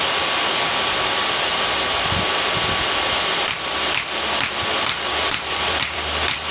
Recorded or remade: remade